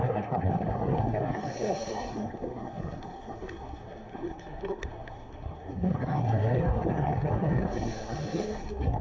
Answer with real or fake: fake